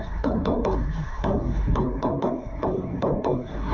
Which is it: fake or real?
fake